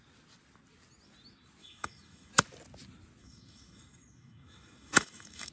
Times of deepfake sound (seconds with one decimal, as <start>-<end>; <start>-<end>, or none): 1.6-2.3; 3.2-5.5